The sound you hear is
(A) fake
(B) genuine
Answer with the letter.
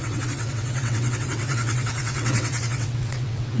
A